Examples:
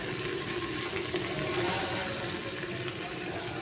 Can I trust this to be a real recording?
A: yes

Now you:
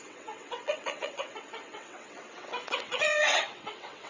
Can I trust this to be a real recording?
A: no